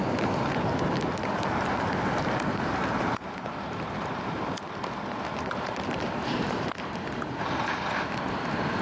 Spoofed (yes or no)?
yes